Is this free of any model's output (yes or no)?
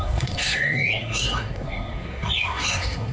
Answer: no